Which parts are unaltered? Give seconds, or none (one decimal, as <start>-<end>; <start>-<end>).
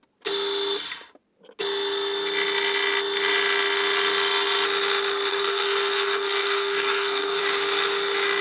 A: 0.0-5.3; 7.4-8.4